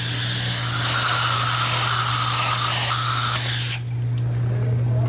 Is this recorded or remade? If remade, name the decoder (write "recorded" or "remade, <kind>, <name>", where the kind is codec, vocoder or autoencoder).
recorded